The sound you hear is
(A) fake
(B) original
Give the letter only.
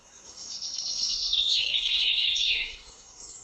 A